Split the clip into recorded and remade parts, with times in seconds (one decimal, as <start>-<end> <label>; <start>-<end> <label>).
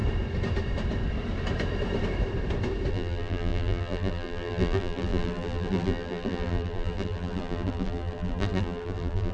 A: 0.0-2.9 recorded; 2.9-9.3 remade